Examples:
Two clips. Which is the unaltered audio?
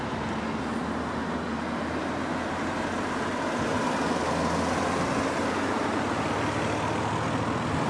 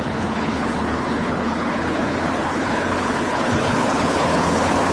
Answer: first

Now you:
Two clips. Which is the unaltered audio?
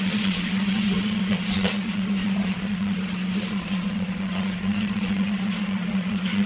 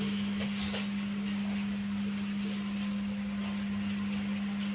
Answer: second